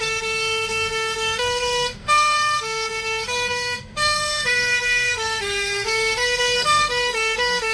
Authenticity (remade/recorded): remade